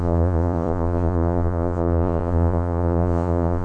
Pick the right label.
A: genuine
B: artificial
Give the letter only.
B